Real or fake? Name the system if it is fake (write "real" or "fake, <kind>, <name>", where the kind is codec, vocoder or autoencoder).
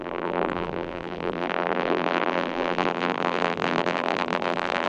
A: fake, vocoder, BigVGAN v2